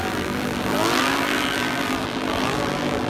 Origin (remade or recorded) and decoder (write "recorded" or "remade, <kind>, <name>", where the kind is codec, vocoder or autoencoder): remade, vocoder, BigVGAN v2